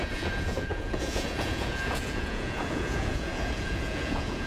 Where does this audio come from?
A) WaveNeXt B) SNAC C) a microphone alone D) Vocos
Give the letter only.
D